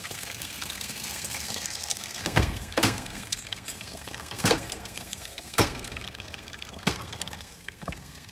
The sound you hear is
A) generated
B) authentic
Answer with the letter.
A